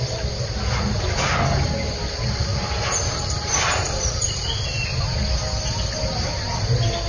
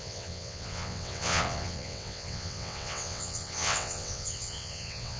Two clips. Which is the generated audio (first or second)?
second